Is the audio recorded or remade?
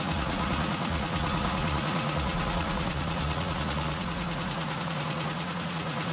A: remade